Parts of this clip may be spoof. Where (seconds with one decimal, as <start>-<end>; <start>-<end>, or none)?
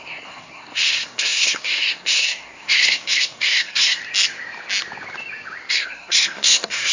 0.0-4.0; 5.7-6.9